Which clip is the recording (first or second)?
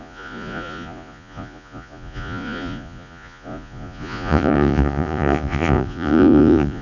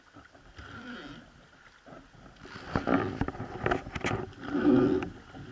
second